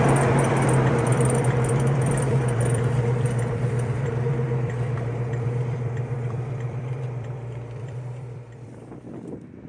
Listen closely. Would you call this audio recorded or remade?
remade